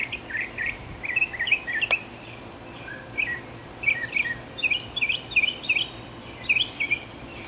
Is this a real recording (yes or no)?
no